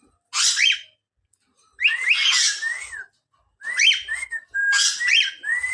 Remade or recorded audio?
recorded